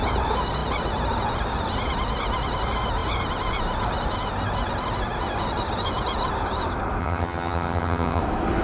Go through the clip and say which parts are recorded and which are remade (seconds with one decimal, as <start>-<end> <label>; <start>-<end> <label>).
0.0-7.0 recorded; 7.0-8.2 remade; 8.2-8.6 recorded